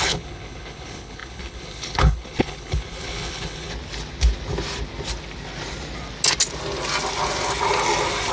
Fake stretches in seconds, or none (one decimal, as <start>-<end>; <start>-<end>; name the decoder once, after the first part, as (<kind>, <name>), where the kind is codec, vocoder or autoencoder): 0.0-3.7 (codec, HILCodec)

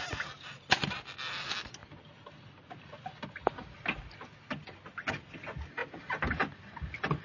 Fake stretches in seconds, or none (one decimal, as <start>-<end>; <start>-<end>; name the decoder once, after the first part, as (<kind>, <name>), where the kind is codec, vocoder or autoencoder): none